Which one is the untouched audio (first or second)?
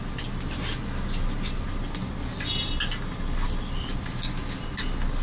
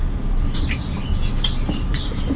first